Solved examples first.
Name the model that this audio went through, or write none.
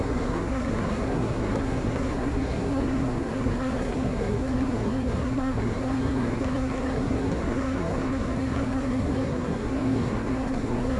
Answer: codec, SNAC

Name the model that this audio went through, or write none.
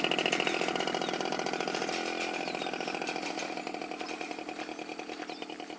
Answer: none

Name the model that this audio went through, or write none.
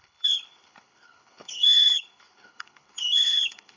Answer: codec, HILCodec